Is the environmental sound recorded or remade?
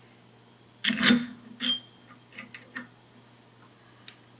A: recorded